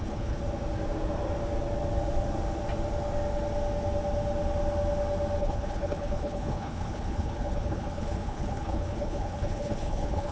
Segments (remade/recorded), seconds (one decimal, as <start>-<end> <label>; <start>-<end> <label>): 0.0-0.4 remade; 0.4-5.4 recorded; 5.4-10.3 remade

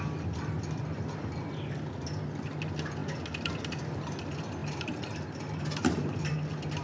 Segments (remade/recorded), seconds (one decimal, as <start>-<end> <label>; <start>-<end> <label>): 0.0-6.8 recorded

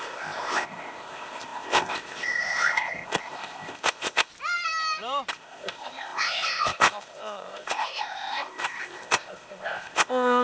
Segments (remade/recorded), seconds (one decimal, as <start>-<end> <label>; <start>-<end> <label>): 0.0-4.3 remade; 4.3-5.3 recorded; 5.3-10.4 remade

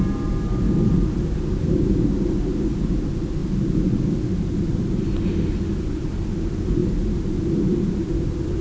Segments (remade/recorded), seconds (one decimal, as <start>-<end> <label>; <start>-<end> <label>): 0.0-8.6 recorded

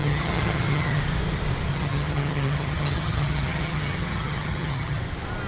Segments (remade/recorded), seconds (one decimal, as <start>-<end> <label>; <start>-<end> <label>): 0.0-1.0 remade; 1.0-1.7 recorded; 1.7-5.0 remade; 5.0-5.5 recorded

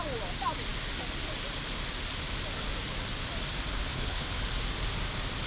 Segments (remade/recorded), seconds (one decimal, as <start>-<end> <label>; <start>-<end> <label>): 0.0-3.9 recorded; 3.9-4.4 remade; 4.4-5.5 recorded